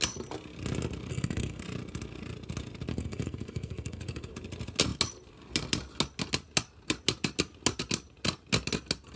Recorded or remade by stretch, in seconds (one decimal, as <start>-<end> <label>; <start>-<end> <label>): 0.0-1.1 recorded; 1.1-1.6 remade; 1.6-2.9 recorded; 2.9-4.3 remade; 4.3-9.2 recorded